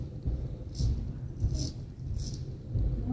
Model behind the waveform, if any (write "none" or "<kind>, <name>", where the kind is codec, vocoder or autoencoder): none